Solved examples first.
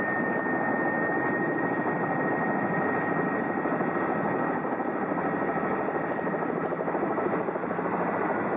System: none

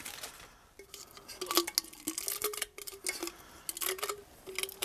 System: none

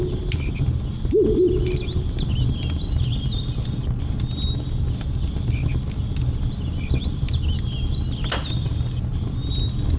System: none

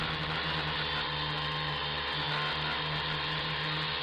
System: none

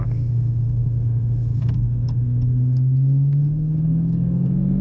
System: codec, SNAC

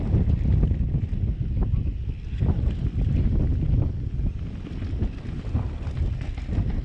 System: none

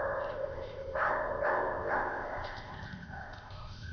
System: codec, ZipCodec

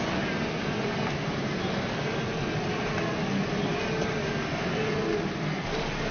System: none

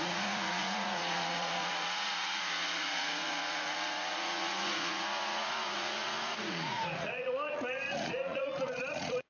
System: vocoder, Vocos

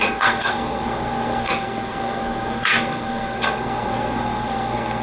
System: codec, SNAC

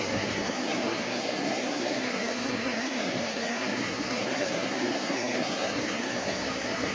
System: codec, SNAC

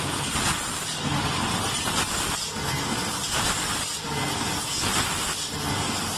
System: none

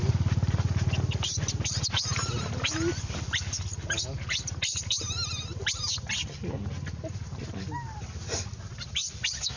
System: none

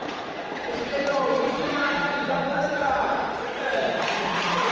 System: vocoder, Vocos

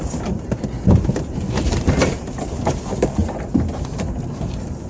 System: vocoder, BigVGAN v2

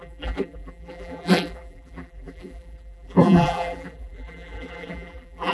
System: vocoder, BigVGAN v2